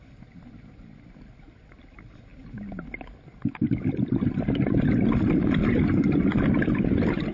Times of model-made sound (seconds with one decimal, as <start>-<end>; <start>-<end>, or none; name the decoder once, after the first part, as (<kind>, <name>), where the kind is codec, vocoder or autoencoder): none